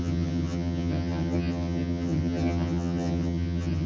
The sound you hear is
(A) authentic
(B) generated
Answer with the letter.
B